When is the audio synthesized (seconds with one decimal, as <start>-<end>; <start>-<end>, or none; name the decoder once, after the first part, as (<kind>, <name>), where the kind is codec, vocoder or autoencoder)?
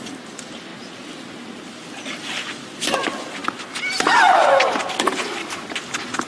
none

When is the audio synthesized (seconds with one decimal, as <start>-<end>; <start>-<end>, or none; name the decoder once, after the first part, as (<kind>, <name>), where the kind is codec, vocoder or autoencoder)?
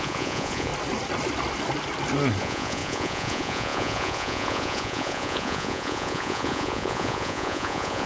0.0-0.7 (vocoder, Vocos); 2.4-8.1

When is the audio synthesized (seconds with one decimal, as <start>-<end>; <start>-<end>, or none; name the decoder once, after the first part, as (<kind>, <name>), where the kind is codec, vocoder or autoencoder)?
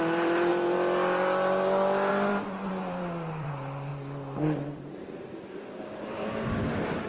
0.0-0.5 (vocoder, BigVGAN v2); 2.1-3.9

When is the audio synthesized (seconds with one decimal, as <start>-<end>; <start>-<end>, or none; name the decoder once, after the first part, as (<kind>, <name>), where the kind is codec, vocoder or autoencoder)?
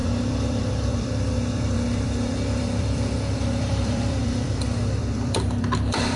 0.0-6.2 (vocoder, BigVGAN v2)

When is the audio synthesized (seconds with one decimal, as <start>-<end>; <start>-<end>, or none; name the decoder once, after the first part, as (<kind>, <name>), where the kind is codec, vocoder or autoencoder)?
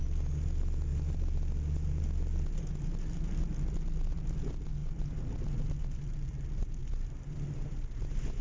4.8-5.4 (vocoder, BigVGAN v2)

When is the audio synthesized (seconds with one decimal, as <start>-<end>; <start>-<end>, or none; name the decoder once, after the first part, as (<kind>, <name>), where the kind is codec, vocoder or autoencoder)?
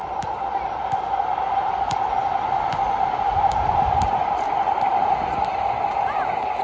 none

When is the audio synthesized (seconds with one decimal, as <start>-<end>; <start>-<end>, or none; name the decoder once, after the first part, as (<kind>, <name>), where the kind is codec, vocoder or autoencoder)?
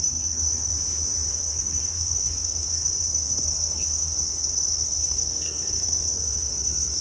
0.0-0.7 (codec, SNAC); 1.3-7.0